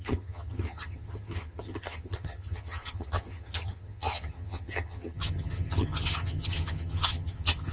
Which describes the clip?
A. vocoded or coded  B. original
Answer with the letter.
A